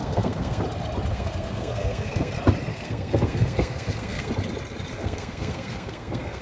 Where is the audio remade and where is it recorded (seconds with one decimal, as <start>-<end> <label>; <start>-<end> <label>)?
0.0-0.6 remade; 0.6-1.1 recorded; 1.1-2.3 remade; 2.3-2.7 recorded; 2.7-4.3 remade; 4.3-5.0 recorded; 5.0-6.4 remade